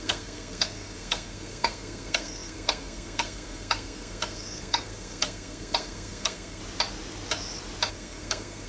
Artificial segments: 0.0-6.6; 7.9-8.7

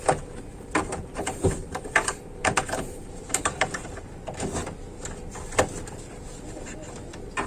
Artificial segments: 1.1-3.9

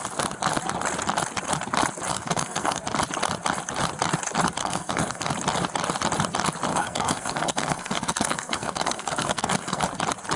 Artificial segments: 2.1-2.8; 4.6-5.3; 6.7-9.8